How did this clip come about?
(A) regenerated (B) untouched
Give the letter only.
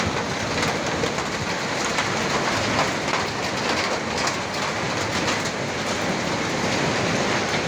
B